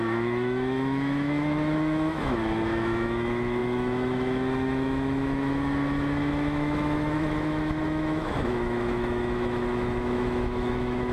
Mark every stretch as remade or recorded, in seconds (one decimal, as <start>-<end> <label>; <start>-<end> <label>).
0.0-11.1 remade